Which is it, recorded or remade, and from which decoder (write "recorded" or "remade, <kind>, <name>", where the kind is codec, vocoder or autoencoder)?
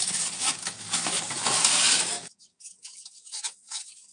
remade, codec, DAC